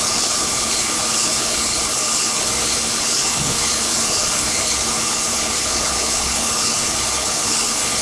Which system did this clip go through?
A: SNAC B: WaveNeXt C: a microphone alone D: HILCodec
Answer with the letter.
D